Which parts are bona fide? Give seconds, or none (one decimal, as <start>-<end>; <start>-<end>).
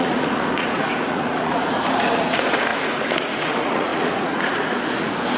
none